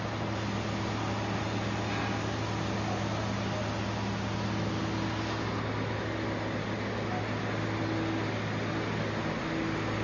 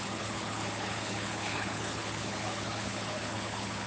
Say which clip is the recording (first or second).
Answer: first